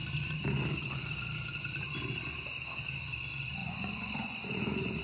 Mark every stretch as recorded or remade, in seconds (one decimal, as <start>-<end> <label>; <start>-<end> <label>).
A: 0.0-3.6 recorded; 3.6-5.0 remade